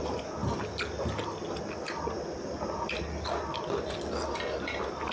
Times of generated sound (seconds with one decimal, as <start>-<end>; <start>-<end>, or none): none